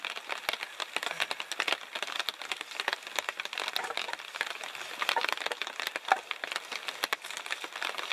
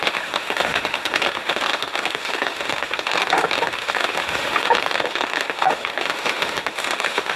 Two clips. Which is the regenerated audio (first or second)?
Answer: second